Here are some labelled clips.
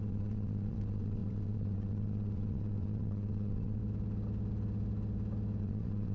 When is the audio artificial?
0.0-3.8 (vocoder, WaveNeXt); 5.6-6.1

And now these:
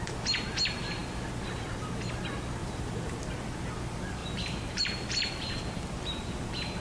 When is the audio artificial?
2.6-3.2 (vocoder, BigVGAN v2); 4.2-6.8

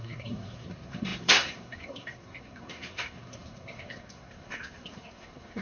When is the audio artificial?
0.0-5.6 (codec, SNAC)

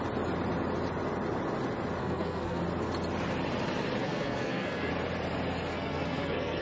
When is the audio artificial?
2.0-2.6 (codec, SNAC); 4.0-4.9; 5.7-6.6